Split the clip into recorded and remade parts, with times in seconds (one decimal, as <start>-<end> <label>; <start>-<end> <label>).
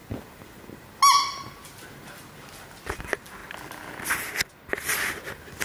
0.0-5.6 recorded